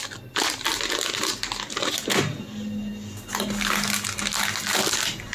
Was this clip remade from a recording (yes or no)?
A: no